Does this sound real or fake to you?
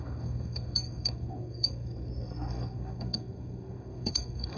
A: fake